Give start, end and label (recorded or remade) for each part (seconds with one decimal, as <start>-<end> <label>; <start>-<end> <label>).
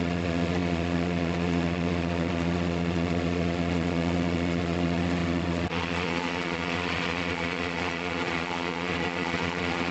0.0-9.9 remade